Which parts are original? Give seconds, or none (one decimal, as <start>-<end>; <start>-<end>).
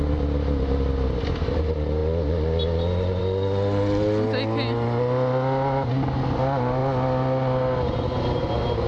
0.0-8.9